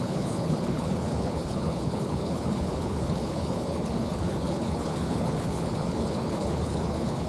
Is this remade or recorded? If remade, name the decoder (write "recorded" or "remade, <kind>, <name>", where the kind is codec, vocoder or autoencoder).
remade, codec, HILCodec